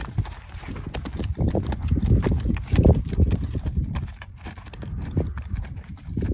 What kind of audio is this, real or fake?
fake